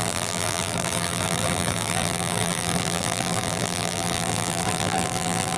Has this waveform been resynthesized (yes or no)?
yes